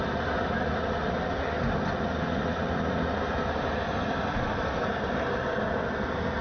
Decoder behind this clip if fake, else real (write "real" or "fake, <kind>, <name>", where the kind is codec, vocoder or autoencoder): real